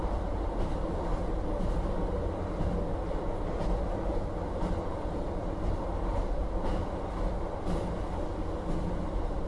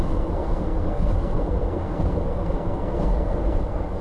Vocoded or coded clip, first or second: second